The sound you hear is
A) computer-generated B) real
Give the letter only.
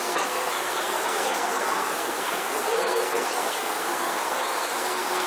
A